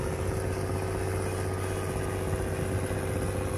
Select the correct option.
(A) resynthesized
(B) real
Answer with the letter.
B